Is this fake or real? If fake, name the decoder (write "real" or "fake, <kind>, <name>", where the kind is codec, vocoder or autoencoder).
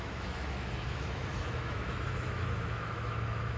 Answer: fake, autoencoder, DAC-VAE